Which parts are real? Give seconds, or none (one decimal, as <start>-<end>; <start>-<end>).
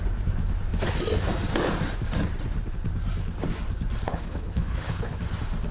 0.0-4.1; 5.2-5.7